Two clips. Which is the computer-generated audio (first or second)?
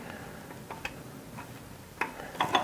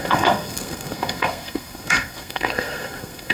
second